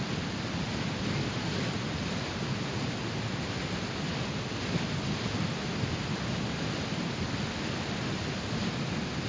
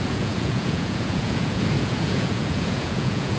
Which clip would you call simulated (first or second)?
second